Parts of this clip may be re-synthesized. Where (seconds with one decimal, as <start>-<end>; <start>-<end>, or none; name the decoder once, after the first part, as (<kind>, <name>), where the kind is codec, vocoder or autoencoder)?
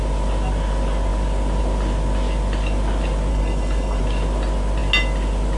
3.3-4.0 (codec, HILCodec)